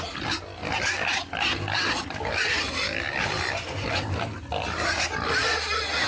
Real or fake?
real